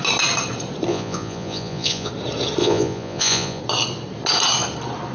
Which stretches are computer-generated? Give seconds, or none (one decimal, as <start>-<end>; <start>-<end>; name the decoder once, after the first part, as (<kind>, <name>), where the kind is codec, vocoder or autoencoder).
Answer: 0.9-2.1 (vocoder, Vocos); 2.6-3.6